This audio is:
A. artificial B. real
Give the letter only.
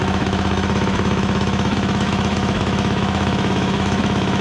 A